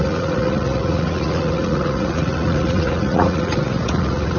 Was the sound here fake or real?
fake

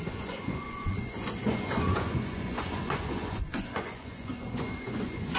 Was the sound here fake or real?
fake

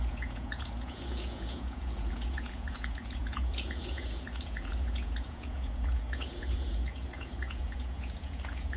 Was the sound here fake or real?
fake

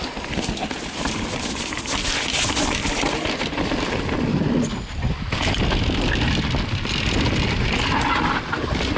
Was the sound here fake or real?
real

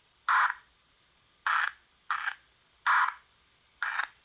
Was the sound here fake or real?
real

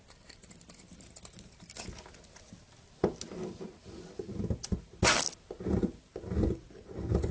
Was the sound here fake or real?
real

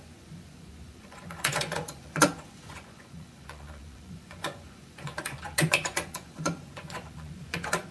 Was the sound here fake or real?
fake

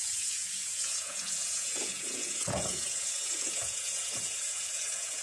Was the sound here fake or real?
fake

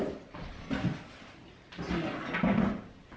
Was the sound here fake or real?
real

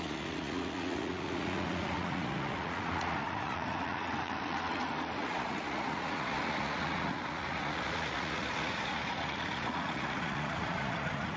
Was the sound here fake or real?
fake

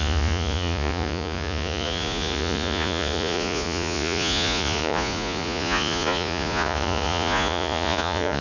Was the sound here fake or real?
fake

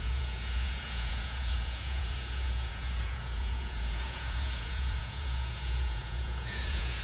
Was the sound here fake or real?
fake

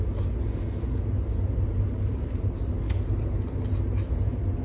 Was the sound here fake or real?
real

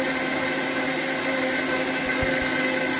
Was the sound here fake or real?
real